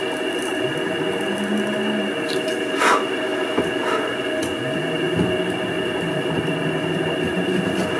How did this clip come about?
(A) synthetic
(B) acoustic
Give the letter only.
B